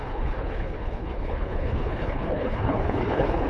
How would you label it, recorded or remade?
remade